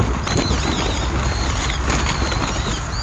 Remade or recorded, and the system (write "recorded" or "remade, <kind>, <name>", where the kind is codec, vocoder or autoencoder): recorded